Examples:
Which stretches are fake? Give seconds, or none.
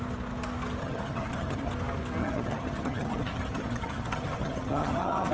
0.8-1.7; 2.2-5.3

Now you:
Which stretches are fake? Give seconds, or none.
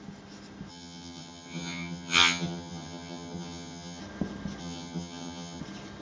0.7-4.0; 4.6-5.6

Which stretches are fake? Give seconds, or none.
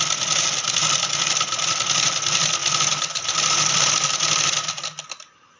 none